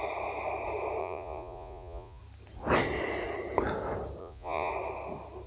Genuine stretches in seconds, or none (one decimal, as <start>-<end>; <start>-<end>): 0.0-1.0; 2.2-4.2; 4.7-5.5

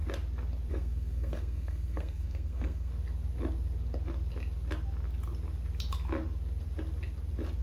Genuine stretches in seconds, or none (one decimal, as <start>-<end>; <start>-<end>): 0.0-0.7; 2.9-7.6